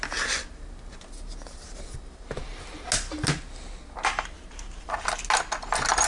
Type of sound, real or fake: real